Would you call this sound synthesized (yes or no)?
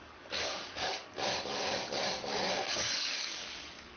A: yes